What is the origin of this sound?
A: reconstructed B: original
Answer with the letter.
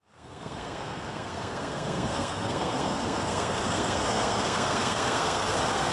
A